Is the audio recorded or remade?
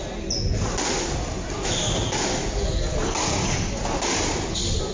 recorded